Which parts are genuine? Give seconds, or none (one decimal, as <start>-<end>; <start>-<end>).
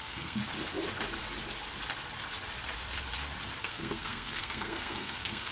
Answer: 0.4-3.6